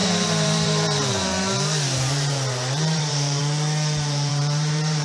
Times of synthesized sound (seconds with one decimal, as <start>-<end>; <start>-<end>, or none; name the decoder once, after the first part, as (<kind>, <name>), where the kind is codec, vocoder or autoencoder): 0.0-3.4 (vocoder, BigVGAN v2); 4.3-5.0